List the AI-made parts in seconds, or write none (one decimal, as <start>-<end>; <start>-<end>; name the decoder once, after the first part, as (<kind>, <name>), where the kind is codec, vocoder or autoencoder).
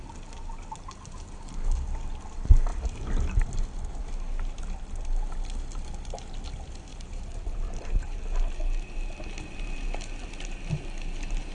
6.9-8.2 (vocoder, BigVGAN v2)